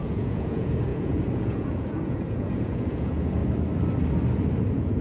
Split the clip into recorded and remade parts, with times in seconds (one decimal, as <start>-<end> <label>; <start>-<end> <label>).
0.0-3.4 remade; 3.4-4.6 recorded; 4.6-5.0 remade